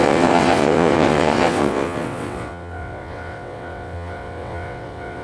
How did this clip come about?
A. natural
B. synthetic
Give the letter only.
B